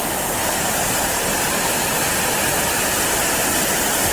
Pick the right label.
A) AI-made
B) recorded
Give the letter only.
B